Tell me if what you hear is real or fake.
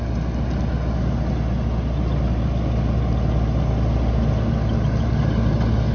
real